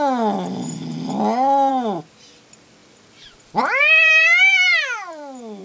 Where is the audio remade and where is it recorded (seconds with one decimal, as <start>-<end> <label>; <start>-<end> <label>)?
0.0-2.8 recorded; 2.8-5.6 remade